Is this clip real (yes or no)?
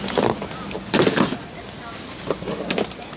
yes